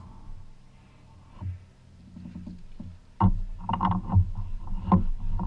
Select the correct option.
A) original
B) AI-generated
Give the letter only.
A